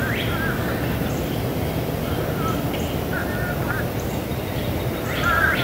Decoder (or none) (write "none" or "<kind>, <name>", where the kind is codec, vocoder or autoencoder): none